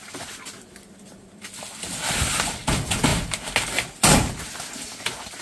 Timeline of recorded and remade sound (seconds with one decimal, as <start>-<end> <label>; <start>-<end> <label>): 0.0-5.4 recorded